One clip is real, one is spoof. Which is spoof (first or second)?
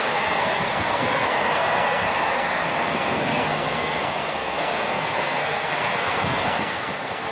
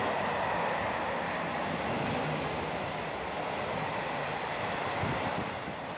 first